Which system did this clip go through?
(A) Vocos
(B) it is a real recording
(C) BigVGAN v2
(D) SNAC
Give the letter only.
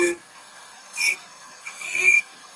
D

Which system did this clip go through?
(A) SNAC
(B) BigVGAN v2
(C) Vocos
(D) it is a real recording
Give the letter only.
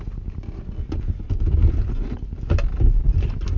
D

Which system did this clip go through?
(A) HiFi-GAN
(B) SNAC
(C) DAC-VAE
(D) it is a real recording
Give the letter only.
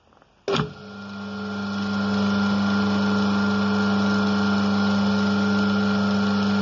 D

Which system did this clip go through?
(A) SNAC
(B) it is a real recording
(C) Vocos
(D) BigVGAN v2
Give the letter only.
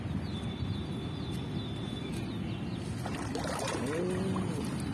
B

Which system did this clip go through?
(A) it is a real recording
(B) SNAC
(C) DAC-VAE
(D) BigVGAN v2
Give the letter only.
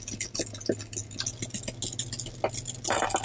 A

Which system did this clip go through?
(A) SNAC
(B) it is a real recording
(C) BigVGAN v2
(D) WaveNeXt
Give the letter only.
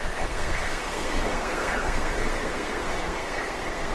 A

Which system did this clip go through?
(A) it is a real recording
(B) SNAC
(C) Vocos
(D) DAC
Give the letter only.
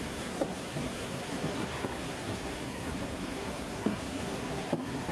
B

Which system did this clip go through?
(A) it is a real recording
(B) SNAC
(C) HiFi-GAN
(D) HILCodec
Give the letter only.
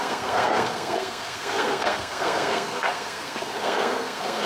B